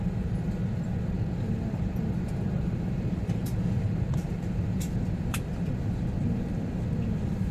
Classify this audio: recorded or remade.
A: remade